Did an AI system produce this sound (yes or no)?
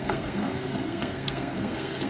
yes